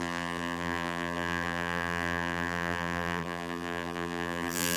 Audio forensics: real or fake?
fake